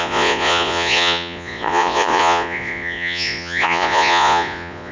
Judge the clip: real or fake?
fake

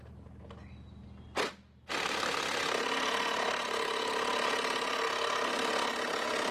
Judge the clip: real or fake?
real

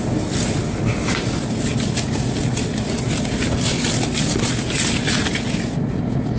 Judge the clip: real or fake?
real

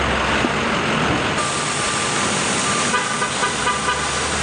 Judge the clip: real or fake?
real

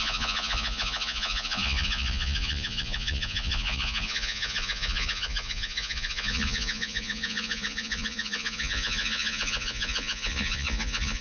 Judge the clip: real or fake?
fake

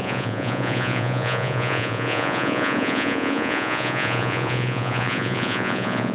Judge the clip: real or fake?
fake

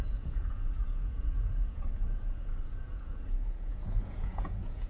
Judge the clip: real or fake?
fake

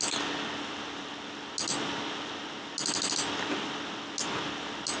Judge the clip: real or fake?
real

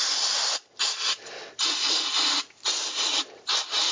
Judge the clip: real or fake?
real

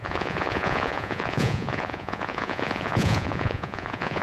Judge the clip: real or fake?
fake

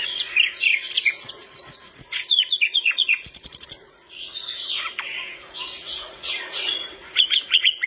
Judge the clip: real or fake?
fake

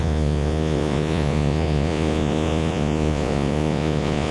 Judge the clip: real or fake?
fake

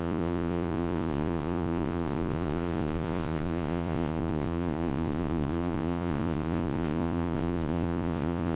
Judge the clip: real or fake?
fake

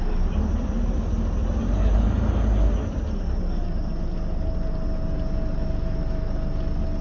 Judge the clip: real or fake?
real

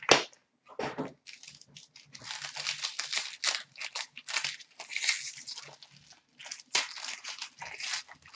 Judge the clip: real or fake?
real